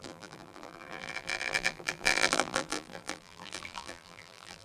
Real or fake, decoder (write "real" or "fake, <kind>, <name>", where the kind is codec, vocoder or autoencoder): fake, vocoder, BigVGAN v2